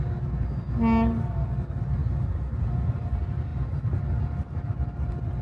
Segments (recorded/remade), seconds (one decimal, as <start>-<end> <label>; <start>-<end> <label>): 0.0-2.0 recorded; 2.0-3.1 remade; 3.1-3.5 recorded; 3.5-4.0 remade; 4.0-5.4 recorded